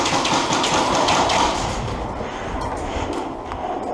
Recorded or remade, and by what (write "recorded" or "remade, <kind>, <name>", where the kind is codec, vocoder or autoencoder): recorded